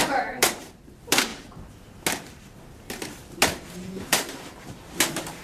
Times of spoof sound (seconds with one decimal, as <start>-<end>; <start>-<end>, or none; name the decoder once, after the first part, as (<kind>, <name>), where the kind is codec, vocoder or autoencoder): 0.0-1.3 (vocoder, BigVGAN v2); 4.0-5.4